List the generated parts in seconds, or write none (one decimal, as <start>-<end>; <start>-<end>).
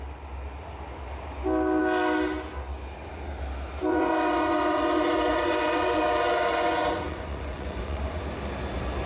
3.9-8.2